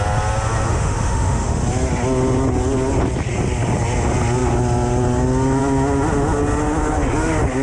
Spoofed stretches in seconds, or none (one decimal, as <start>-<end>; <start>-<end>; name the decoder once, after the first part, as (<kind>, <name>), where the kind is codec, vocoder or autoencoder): 0.7-1.6 (autoencoder, DAC-VAE)